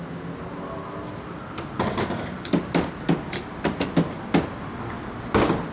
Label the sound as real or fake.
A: real